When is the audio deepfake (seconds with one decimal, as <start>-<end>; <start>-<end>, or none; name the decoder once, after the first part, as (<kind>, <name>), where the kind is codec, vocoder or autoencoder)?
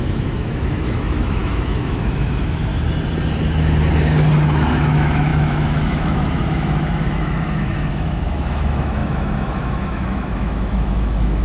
0.0-2.7 (autoencoder, DAC-VAE); 4.4-11.4